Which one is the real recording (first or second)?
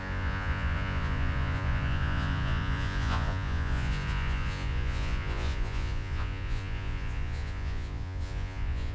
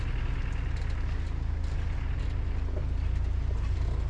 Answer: second